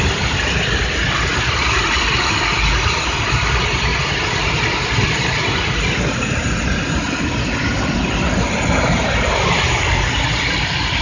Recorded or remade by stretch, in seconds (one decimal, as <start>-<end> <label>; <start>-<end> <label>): 0.0-11.0 recorded